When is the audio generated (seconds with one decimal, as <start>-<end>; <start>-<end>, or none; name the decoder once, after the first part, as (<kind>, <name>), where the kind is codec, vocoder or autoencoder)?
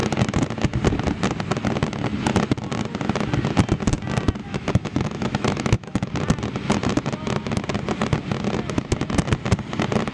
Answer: 4.4-6.1 (autoencoder, DAC-VAE)